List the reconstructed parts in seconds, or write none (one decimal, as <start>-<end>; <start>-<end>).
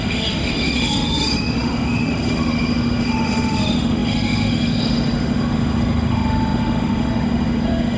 0.0-8.0